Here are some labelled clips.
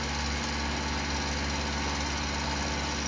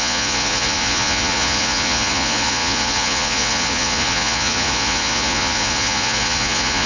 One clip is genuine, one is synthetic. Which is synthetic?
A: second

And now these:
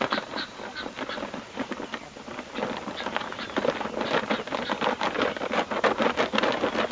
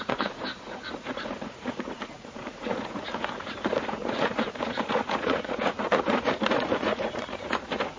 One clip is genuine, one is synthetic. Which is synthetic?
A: second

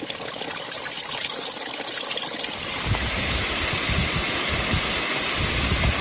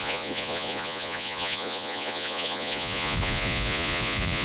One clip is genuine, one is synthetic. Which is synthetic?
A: second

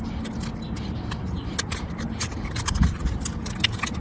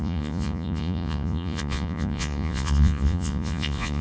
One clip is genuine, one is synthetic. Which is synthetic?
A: second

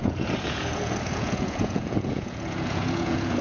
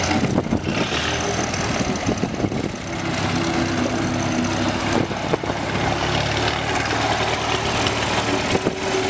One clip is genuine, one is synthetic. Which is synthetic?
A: first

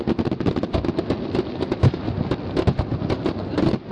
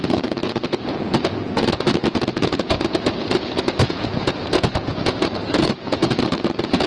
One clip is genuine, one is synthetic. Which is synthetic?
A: second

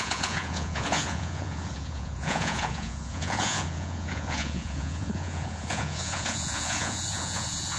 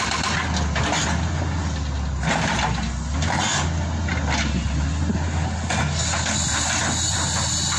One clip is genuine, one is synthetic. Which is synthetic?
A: first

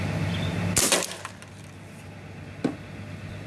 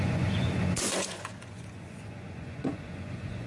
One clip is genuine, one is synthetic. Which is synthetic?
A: second